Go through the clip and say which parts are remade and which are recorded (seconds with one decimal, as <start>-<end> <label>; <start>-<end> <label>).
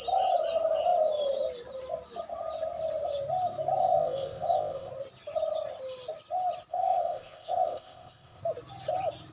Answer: 0.0-3.8 recorded; 3.8-4.9 remade; 4.9-6.7 recorded; 6.7-8.4 remade; 8.4-9.3 recorded